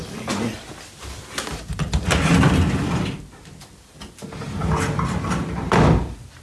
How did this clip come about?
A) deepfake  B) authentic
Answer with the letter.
B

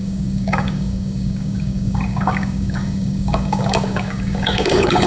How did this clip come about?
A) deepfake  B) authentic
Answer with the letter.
A